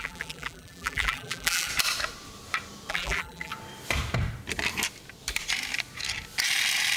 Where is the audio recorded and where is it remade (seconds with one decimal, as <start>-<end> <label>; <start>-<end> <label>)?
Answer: 0.0-1.7 remade; 1.7-2.9 recorded; 2.9-3.5 remade; 3.5-7.0 recorded